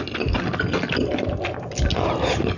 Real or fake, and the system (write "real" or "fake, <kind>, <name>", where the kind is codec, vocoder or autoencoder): real